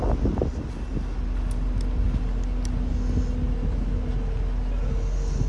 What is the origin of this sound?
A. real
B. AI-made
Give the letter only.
A